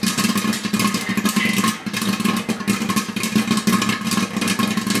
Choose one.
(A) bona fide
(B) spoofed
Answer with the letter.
A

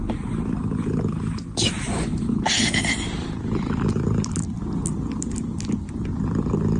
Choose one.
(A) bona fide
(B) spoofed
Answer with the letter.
A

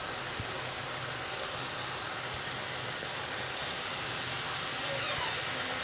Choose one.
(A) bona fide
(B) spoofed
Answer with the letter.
A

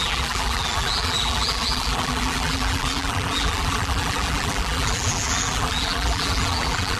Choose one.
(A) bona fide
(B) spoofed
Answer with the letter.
B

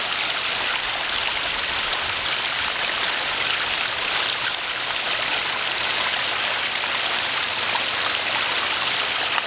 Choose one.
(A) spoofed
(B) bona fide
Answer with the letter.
A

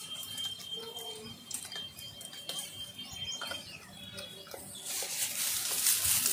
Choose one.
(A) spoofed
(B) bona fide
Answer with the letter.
B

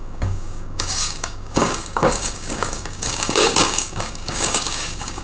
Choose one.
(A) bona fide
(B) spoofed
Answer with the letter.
B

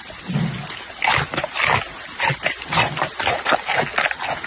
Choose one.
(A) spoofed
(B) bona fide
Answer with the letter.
B